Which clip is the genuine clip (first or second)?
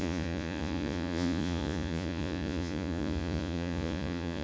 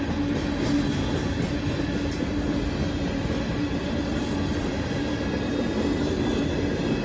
second